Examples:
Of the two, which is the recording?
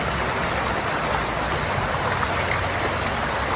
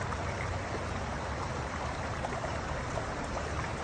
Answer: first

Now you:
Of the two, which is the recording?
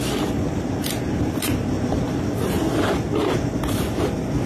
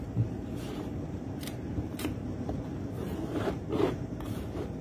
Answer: first